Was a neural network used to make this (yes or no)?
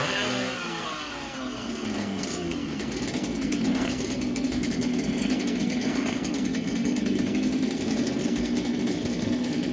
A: yes